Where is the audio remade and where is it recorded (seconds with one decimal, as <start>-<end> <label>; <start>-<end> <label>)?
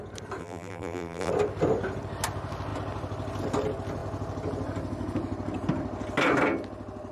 0.0-0.4 recorded; 0.4-1.3 remade; 1.3-7.1 recorded